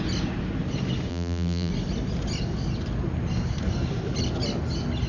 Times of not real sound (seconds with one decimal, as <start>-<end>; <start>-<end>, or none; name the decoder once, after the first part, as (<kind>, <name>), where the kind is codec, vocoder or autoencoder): 1.1-1.7 (vocoder, BigVGAN v2)